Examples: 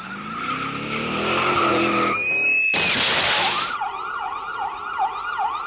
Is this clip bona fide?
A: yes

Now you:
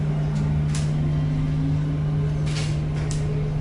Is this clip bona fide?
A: yes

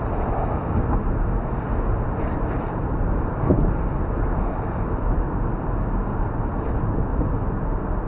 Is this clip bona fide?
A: yes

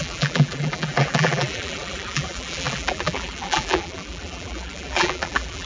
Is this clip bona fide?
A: no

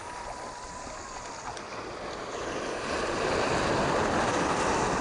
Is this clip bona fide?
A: yes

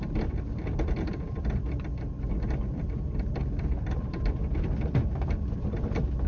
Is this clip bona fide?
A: no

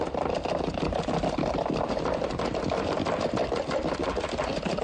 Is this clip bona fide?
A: no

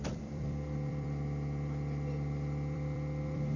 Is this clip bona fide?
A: no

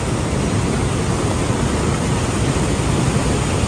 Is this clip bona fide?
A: yes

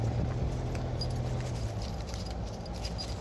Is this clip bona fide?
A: yes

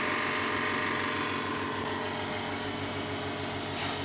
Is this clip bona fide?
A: yes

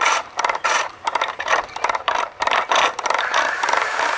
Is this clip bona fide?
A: no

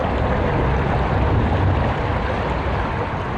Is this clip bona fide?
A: no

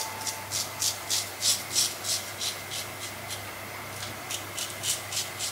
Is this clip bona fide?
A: yes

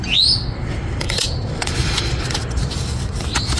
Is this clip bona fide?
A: no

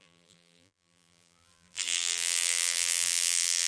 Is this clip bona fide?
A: no